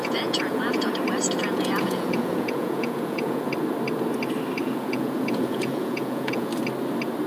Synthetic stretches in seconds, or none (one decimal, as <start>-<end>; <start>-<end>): 0.0-0.9; 1.4-3.5; 4.6-6.5